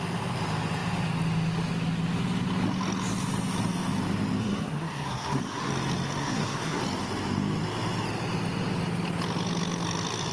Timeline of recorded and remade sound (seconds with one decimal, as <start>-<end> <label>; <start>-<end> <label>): 0.0-4.4 recorded; 4.4-5.7 remade; 5.7-6.2 recorded; 6.2-6.8 remade; 6.8-10.3 recorded